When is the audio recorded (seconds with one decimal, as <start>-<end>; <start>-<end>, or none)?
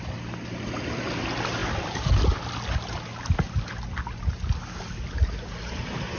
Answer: 0.0-6.2